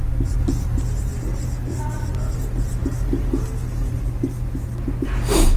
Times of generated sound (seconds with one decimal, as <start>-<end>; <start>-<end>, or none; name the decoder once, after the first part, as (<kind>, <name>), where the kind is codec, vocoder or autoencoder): none